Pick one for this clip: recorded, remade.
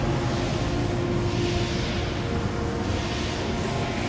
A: recorded